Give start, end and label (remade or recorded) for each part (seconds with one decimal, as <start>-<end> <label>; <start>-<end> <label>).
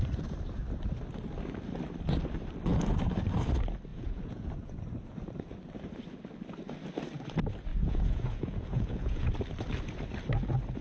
0.0-3.9 recorded; 3.9-4.5 remade; 4.5-7.7 recorded; 7.7-9.3 remade; 9.3-10.8 recorded